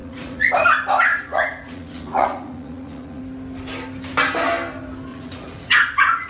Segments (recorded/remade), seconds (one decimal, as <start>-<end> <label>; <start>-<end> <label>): 0.0-0.5 remade; 0.5-1.1 recorded; 1.1-3.2 remade; 3.2-5.1 recorded; 5.1-6.3 remade